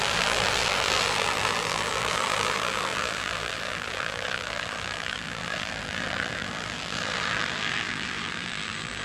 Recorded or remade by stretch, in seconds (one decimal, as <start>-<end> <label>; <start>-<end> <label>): 0.0-9.0 remade